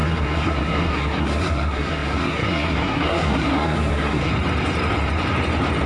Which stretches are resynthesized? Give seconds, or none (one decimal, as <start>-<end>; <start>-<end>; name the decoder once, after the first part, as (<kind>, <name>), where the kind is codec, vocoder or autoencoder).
0.0-4.3 (codec, SNAC)